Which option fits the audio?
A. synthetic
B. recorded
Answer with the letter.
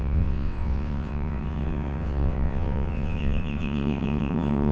A